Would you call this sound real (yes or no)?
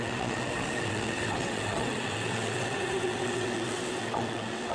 no